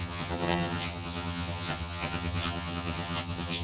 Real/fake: fake